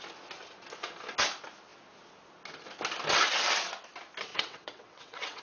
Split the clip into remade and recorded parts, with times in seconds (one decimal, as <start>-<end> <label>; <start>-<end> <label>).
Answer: 0.0-4.3 recorded; 4.3-5.4 remade